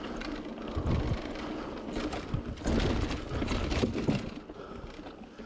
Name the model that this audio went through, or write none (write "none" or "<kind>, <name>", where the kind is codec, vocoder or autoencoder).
none